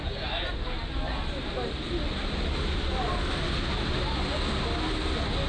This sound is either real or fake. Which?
real